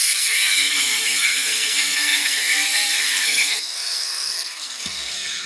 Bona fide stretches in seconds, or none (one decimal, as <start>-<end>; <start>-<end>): none